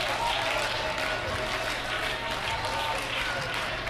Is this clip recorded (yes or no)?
yes